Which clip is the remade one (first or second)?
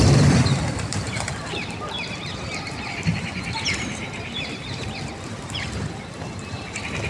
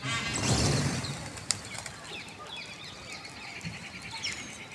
first